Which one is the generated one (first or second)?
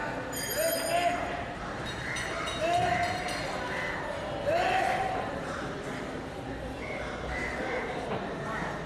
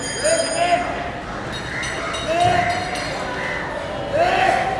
first